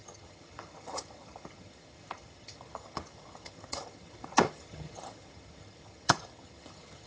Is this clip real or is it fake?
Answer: fake